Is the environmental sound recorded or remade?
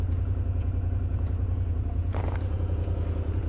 remade